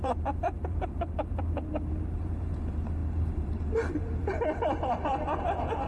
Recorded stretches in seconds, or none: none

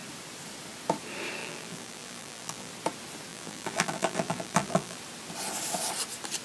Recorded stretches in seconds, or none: 0.0-1.4; 2.7-3.3; 5.0-6.4

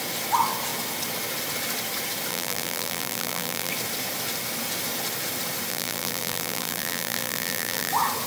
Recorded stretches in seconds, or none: 0.0-2.3; 3.7-5.7; 7.9-8.3